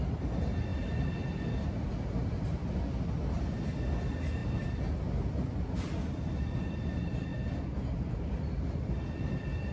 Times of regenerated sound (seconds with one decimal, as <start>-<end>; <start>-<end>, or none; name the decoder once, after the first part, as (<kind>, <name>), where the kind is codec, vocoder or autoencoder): none